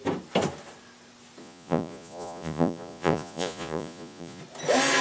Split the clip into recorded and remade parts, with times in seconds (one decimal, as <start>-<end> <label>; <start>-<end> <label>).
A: 0.0-1.4 recorded; 1.4-4.4 remade; 4.4-5.0 recorded